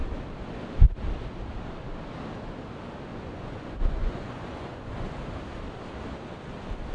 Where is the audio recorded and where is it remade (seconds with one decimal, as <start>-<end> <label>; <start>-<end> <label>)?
0.0-3.1 recorded; 3.1-5.2 remade; 5.2-6.9 recorded